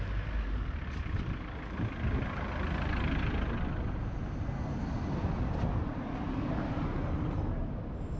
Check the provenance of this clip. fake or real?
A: real